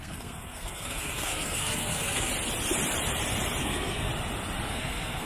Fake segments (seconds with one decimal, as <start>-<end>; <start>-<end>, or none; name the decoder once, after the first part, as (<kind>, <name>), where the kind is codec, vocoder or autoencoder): 0.0-2.3 (codec, SNAC); 3.6-4.1; 4.7-5.3

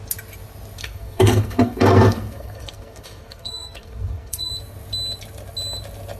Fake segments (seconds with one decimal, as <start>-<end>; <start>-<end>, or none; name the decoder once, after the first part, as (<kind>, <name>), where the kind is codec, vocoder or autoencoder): 0.8-4.5 (codec, SNAC)

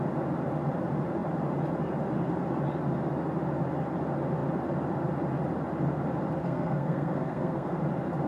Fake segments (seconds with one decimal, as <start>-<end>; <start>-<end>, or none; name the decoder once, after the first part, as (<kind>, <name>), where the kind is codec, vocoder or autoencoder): 6.4-7.8 (codec, SNAC)

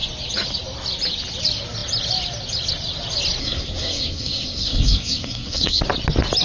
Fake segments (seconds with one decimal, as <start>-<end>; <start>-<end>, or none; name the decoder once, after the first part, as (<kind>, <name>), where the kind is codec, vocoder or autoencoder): 3.4-5.8 (codec, SNAC)

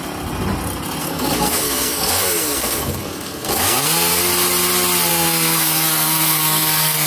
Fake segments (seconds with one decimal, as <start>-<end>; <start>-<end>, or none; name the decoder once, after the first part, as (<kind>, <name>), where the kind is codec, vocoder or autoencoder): 1.0-4.2 (codec, SNAC); 5.1-7.1

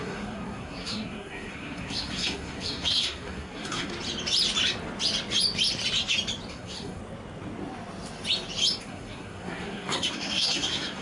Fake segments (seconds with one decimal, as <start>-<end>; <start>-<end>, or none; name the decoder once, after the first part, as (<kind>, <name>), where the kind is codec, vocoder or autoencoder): 0.0-3.9 (codec, SNAC); 6.5-7.0; 8.8-11.0

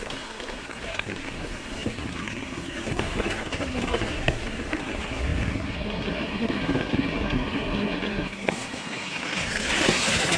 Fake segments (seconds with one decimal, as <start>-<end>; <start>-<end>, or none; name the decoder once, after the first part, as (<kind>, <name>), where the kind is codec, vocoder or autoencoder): 0.0-10.4 (codec, SNAC)